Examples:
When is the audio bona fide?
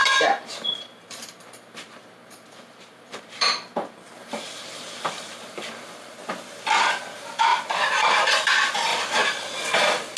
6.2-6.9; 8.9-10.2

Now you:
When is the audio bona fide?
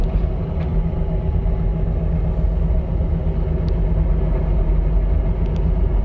0.0-6.0